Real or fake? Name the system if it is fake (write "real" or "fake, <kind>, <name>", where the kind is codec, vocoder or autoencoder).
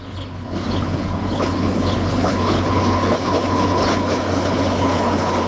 fake, codec, HILCodec